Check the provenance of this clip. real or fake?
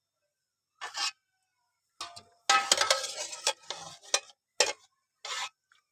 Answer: real